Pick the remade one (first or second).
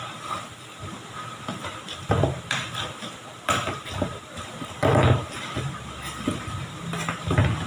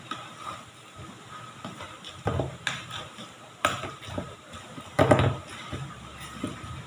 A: first